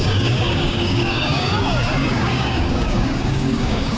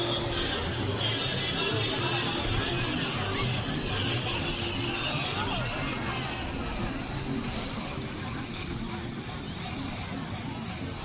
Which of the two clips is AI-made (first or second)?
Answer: first